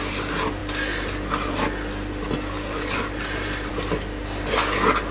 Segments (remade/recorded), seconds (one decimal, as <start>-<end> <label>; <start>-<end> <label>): 0.0-5.1 recorded